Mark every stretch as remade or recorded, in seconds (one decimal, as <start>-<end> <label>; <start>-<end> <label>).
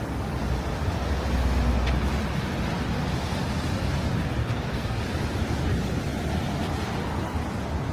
0.0-4.4 recorded; 4.4-5.0 remade; 5.0-7.9 recorded